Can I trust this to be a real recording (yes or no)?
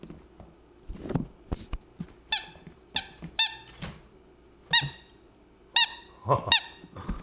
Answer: yes